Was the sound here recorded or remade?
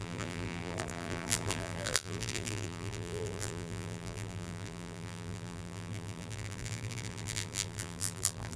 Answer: remade